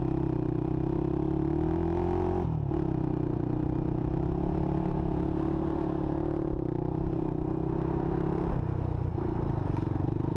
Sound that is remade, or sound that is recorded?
recorded